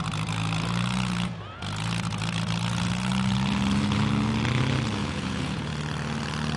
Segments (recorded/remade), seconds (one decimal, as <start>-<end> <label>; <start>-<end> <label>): 0.0-5.0 recorded; 5.0-5.7 remade; 5.7-6.6 recorded